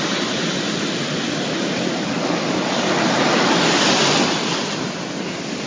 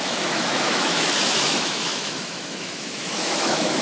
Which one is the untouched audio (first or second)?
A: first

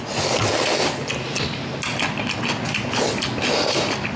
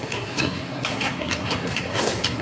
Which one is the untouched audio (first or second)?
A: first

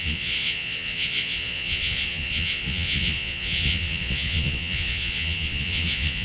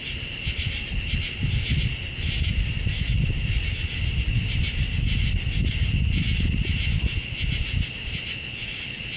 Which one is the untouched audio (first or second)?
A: second